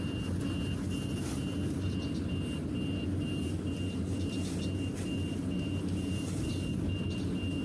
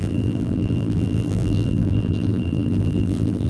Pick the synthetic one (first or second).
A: second